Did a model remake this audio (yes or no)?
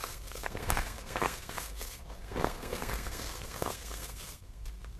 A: yes